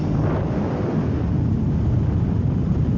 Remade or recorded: recorded